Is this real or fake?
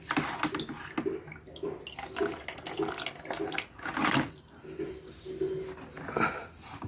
real